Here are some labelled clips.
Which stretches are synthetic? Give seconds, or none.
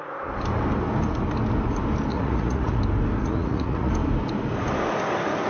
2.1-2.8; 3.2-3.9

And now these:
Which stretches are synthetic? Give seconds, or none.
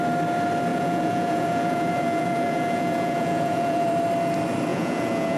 0.7-3.9; 4.7-5.4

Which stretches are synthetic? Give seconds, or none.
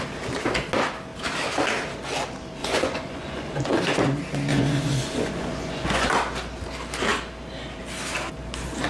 2.6-3.7; 4.5-6.1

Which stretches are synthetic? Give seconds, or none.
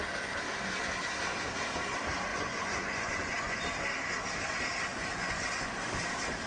2.3-3.6; 4.9-5.9